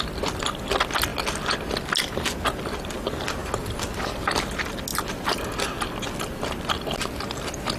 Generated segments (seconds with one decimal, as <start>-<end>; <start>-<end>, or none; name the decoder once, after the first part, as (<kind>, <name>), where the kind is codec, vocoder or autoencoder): 3.4-4.1 (vocoder, BigVGAN v2)